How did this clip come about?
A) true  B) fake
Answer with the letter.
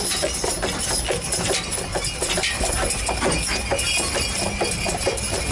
A